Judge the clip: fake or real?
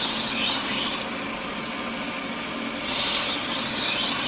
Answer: real